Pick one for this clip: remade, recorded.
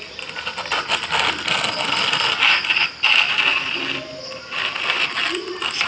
recorded